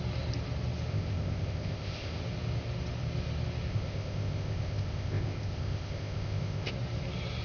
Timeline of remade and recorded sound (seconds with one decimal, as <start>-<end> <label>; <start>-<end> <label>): 0.0-0.9 recorded; 0.9-2.2 remade; 2.2-3.7 recorded; 3.7-6.7 remade; 6.7-7.4 recorded